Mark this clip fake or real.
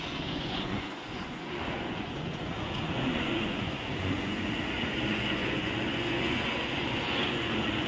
fake